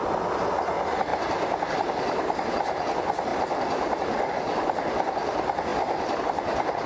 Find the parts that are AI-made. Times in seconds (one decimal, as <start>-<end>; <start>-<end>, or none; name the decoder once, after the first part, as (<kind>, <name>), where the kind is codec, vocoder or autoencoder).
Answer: none